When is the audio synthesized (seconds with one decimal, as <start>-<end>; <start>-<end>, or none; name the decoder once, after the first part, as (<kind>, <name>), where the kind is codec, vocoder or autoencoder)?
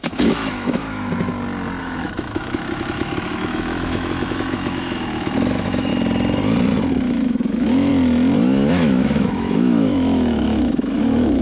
0.0-1.1 (autoencoder, DAC-VAE); 1.8-5.9; 7.0-7.9; 8.7-11.4